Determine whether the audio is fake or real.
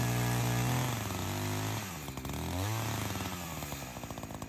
real